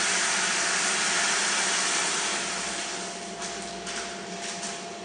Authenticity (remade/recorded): recorded